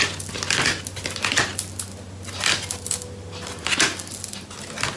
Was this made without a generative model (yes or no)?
yes